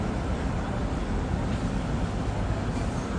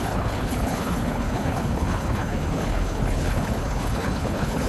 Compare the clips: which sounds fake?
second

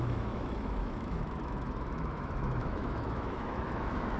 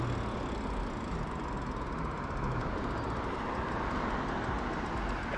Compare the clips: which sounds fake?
first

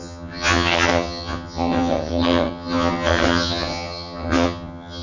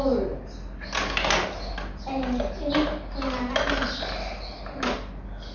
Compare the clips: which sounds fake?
first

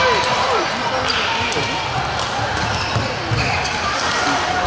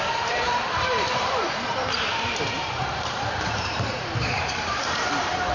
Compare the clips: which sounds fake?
second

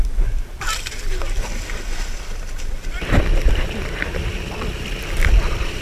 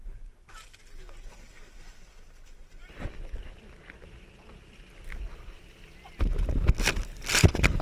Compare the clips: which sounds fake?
first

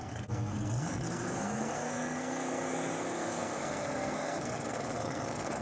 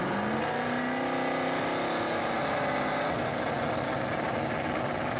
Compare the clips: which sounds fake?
first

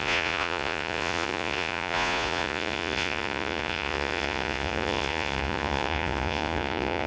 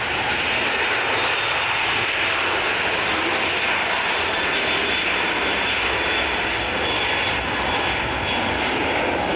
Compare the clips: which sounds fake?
first